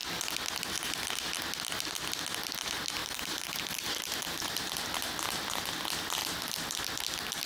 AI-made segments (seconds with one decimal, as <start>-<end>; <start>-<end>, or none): 3.0-4.7